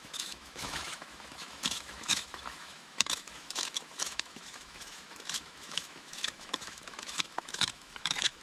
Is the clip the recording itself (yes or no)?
no